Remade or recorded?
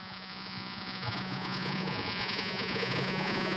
remade